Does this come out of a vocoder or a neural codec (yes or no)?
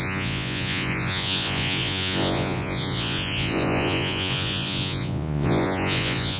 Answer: yes